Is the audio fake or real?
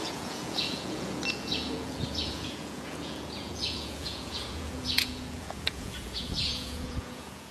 fake